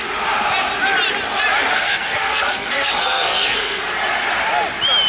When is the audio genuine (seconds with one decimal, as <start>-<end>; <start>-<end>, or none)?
0.0-1.7; 3.8-5.1